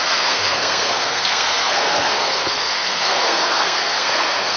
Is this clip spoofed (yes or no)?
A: yes